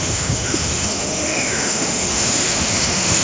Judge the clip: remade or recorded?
remade